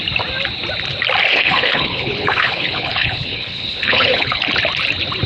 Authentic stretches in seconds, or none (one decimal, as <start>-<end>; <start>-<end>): 0.0-1.3; 4.5-5.3